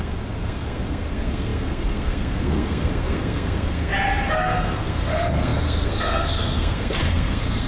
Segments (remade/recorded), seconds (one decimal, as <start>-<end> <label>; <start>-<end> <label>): 0.0-3.9 remade; 3.9-4.4 recorded; 4.4-7.7 remade

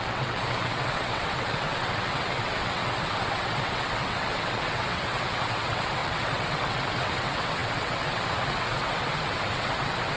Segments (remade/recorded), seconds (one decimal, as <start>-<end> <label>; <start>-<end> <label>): 0.0-10.2 remade